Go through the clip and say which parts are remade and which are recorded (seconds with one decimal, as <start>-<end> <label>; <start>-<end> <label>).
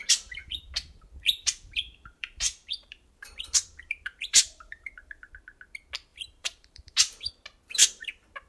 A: 0.0-0.4 recorded; 0.4-5.3 remade; 5.3-6.1 recorded; 6.1-7.3 remade; 7.3-7.8 recorded; 7.8-8.5 remade